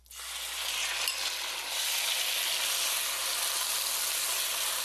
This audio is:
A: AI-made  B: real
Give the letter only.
B